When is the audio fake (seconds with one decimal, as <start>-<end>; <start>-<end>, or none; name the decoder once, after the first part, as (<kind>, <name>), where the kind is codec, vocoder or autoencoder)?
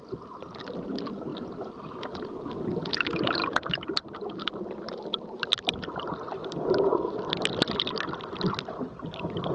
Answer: 1.3-1.9 (vocoder, BigVGAN v2); 3.4-7.7